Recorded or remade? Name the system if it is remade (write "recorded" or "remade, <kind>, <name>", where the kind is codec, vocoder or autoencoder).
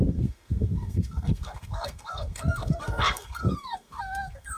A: remade, codec, SNAC